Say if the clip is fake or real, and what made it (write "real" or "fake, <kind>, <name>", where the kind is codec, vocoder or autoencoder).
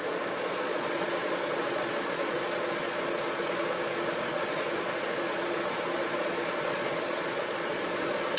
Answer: fake, vocoder, Vocos